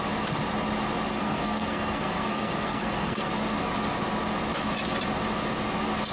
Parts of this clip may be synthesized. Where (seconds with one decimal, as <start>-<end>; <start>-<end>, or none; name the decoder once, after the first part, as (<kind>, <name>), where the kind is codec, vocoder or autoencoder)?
1.2-3.3 (codec, SNAC)